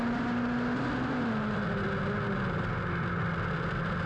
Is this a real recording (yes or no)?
yes